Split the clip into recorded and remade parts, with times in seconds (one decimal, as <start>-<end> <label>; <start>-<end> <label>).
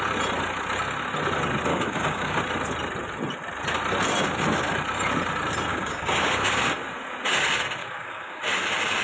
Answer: 0.0-1.7 recorded; 1.7-2.4 remade; 2.4-5.7 recorded; 5.7-6.6 remade; 6.6-7.8 recorded; 7.8-8.4 remade; 8.4-9.0 recorded